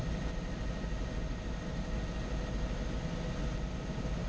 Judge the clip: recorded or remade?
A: recorded